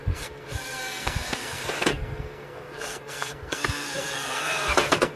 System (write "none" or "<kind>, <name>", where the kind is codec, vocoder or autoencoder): codec, SNAC